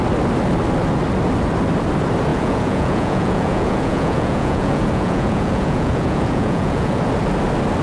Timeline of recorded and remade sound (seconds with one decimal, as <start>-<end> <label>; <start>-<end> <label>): 0.0-2.3 recorded; 2.3-7.0 remade; 7.0-7.8 recorded